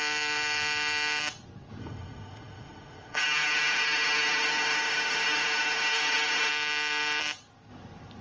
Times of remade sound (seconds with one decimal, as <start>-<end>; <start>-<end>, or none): 1.8-6.5